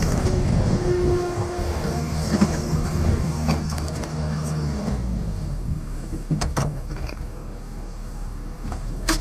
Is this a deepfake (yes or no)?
yes